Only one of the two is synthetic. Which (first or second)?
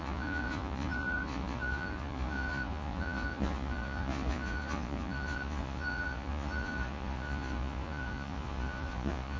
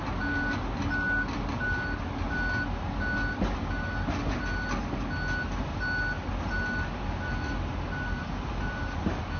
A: first